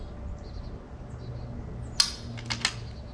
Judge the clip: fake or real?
real